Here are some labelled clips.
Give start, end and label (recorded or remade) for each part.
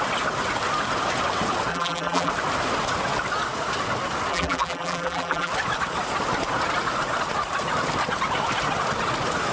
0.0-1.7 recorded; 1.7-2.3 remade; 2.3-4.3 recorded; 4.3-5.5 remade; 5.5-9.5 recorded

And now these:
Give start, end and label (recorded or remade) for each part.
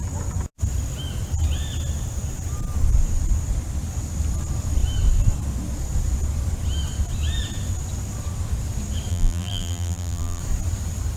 0.0-9.1 recorded; 9.1-10.4 remade; 10.4-11.2 recorded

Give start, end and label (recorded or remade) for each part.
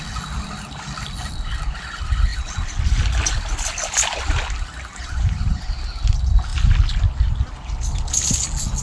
0.0-4.9 recorded; 4.9-5.5 remade; 5.5-8.8 recorded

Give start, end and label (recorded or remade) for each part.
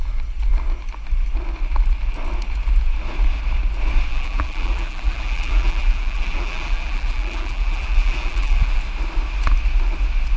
0.0-4.1 recorded; 4.1-8.8 remade; 8.8-10.4 recorded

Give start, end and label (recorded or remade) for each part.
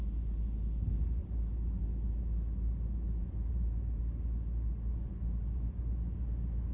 0.0-1.2 recorded; 1.2-1.8 remade; 1.8-3.2 recorded; 3.2-4.0 remade; 4.0-6.7 recorded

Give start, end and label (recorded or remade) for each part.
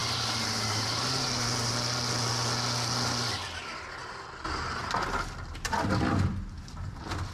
0.0-1.7 remade; 1.7-7.3 recorded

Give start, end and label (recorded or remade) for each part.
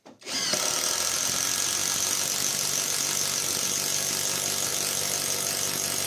0.0-6.1 recorded